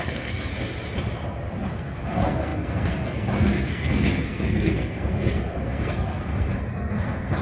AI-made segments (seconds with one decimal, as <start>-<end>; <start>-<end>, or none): 0.0-0.5; 1.7-7.4

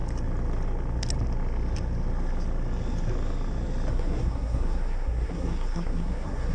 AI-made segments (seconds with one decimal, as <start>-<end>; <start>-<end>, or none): 3.9-6.5

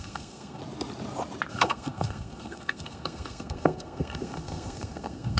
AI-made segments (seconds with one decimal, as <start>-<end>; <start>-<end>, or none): 0.0-0.6; 1.5-5.4

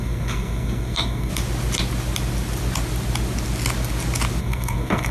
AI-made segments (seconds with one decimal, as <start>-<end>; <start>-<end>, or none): 0.0-1.3; 4.4-5.1